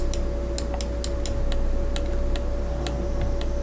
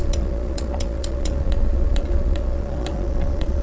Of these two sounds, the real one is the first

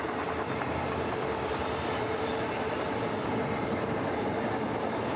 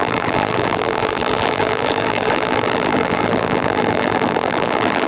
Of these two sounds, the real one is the first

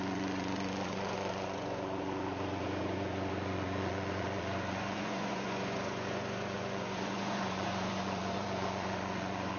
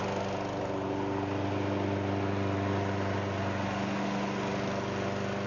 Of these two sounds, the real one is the second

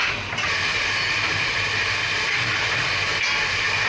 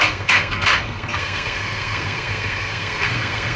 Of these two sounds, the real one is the first